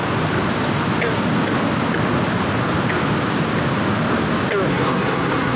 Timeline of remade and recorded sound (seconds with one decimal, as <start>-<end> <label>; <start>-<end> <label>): 0.0-4.7 recorded; 4.7-5.6 remade